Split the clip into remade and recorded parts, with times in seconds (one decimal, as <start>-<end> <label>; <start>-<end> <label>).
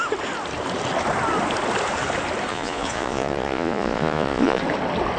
0.0-2.5 recorded; 2.5-4.6 remade; 4.6-5.2 recorded